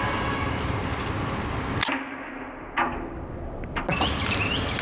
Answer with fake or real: real